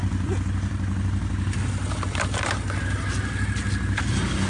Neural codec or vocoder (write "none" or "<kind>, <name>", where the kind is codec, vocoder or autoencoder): none